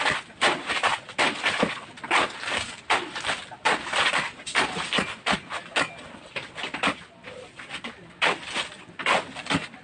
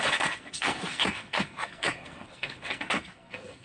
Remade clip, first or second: second